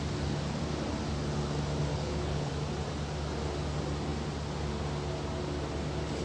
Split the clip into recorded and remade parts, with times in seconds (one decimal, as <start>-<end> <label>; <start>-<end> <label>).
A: 0.0-1.9 recorded; 1.9-2.5 remade; 2.5-6.2 recorded